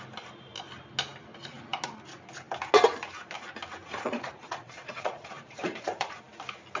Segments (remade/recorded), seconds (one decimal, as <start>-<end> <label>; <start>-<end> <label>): 0.0-3.8 recorded; 3.8-6.2 remade; 6.2-6.8 recorded